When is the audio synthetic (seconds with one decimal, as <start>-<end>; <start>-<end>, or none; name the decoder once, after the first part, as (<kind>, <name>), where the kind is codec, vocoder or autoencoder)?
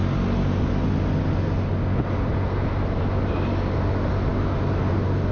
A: none